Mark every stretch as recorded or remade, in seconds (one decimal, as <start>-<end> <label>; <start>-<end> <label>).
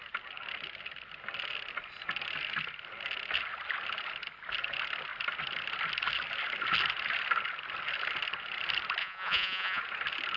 0.0-9.0 recorded; 9.0-9.8 remade; 9.8-10.4 recorded